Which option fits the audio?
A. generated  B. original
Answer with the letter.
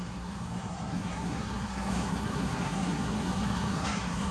A